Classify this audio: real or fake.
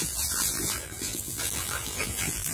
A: fake